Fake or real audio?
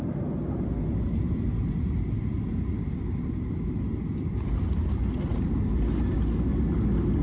real